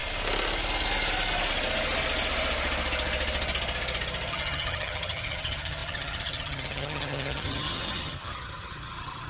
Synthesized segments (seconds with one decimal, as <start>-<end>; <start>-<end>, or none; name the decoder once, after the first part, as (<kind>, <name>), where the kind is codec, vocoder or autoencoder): 4.3-9.3 (vocoder, HiFi-GAN)